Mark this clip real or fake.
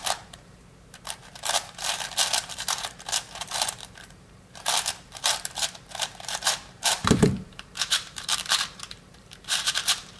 fake